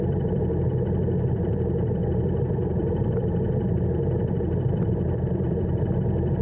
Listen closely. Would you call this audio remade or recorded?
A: remade